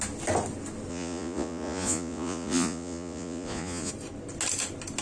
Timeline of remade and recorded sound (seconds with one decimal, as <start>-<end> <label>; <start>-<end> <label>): 0.0-0.9 recorded; 0.9-3.9 remade; 3.9-5.0 recorded

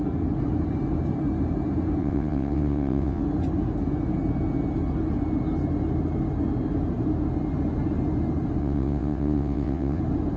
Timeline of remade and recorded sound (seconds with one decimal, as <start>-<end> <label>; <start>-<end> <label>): 0.0-2.0 recorded; 2.0-3.2 remade; 3.2-8.6 recorded; 8.6-10.0 remade; 10.0-10.4 recorded

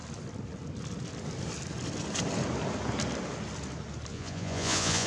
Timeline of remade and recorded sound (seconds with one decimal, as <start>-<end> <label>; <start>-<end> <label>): 0.0-4.1 recorded; 4.1-5.1 remade

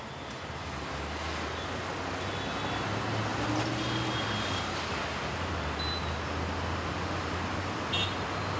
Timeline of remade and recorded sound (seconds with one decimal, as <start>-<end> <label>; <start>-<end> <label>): 0.0-8.6 recorded

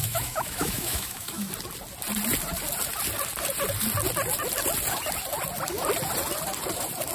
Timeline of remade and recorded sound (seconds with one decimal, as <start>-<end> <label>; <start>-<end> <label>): 0.0-1.5 remade; 1.5-7.1 recorded

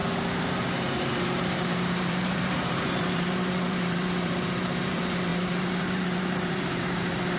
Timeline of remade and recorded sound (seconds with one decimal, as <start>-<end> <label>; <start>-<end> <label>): 0.0-1.2 recorded; 1.2-7.4 remade